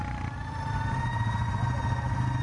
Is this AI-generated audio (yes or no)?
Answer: no